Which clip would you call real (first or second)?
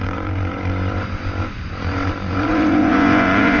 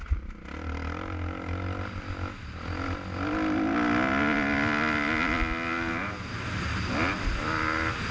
second